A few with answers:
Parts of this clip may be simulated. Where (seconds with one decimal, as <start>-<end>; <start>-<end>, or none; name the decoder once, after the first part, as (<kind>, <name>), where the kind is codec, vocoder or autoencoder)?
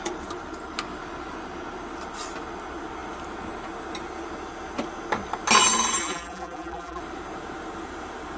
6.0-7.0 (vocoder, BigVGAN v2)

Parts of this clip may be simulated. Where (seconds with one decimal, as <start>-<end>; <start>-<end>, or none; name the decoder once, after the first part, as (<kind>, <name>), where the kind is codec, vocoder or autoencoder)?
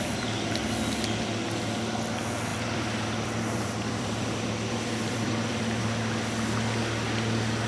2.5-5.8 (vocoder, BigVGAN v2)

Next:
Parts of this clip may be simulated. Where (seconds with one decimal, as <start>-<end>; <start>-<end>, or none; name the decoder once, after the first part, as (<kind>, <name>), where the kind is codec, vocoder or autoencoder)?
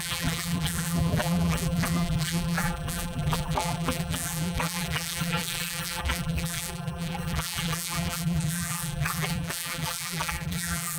0.0-11.0 (vocoder, BigVGAN v2)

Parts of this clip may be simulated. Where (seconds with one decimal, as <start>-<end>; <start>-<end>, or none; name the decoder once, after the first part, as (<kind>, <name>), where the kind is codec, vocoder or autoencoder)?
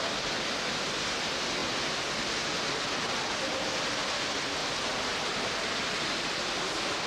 none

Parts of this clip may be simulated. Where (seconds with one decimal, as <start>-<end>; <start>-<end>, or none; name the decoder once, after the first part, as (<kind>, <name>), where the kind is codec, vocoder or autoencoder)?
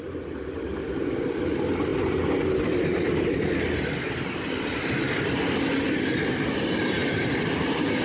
none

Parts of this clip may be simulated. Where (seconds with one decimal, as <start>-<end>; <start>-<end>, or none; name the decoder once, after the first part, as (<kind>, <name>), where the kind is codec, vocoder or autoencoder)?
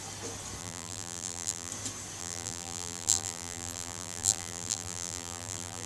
0.6-1.7 (vocoder, BigVGAN v2); 2.2-5.9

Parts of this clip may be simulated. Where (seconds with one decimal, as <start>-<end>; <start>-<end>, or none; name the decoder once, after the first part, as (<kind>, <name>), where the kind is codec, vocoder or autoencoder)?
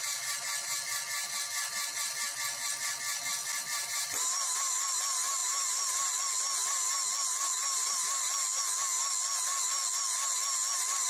3.4-5.0 (vocoder, BigVGAN v2); 5.4-5.9; 7.5-8.1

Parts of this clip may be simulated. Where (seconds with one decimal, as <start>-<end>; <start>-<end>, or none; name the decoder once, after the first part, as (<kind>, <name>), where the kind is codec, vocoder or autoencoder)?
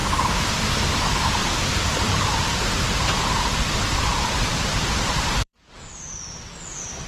1.4-5.7 (vocoder, BigVGAN v2)